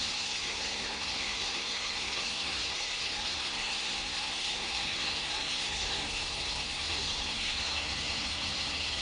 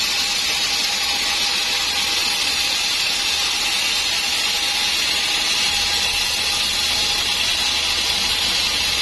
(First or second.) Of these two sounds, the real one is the second